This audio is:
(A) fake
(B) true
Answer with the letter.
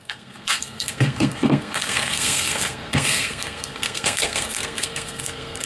A